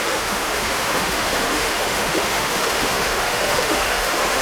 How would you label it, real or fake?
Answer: fake